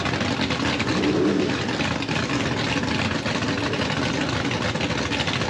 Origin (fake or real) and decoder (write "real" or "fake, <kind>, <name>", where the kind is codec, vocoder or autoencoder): real